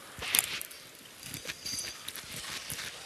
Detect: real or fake fake